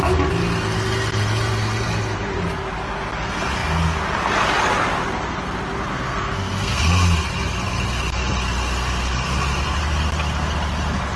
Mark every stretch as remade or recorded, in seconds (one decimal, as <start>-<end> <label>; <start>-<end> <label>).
0.0-5.9 recorded; 5.9-6.8 remade; 6.8-11.2 recorded